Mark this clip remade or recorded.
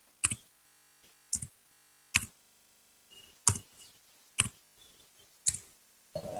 recorded